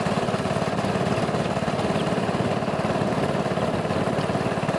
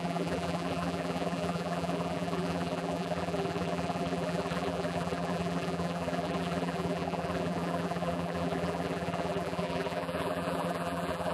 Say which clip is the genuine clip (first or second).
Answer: first